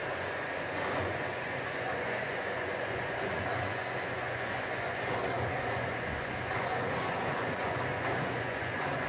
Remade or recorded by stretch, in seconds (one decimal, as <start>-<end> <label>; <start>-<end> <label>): 0.0-9.1 remade